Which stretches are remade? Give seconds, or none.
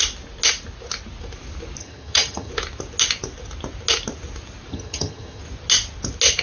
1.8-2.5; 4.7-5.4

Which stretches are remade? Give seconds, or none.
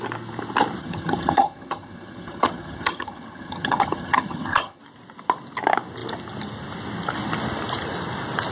0.8-4.8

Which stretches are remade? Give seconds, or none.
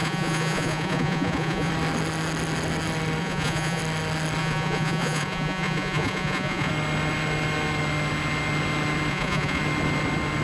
0.0-1.7; 3.2-3.8; 4.4-6.7; 9.1-9.6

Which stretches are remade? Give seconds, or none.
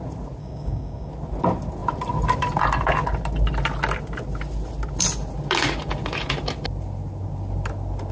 0.4-1.1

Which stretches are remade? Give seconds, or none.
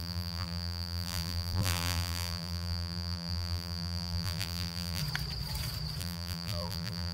0.0-5.0; 6.0-7.1